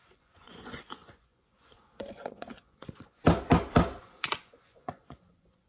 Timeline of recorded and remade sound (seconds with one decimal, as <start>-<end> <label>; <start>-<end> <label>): 0.0-3.2 remade; 3.2-4.0 recorded; 4.0-5.7 remade